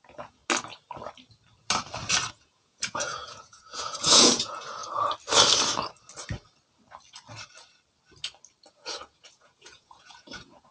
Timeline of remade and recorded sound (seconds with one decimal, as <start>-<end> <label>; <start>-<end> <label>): 0.0-0.4 remade; 0.4-2.3 recorded; 2.3-4.8 remade; 4.8-8.7 recorded; 8.7-10.7 remade